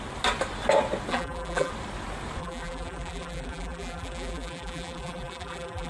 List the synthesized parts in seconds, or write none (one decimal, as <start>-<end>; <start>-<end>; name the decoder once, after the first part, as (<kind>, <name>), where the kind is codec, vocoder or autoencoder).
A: 1.1-1.7 (vocoder, BigVGAN v2); 2.4-5.9